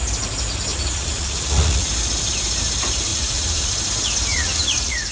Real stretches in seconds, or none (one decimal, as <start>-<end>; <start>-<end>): 0.0-0.7; 1.9-3.1; 3.7-4.3